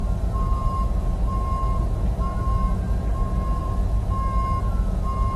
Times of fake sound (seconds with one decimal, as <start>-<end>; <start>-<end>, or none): none